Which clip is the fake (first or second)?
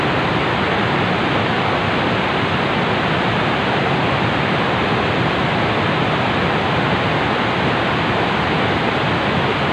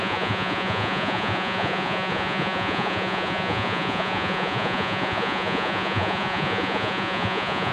second